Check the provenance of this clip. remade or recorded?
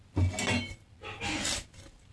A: recorded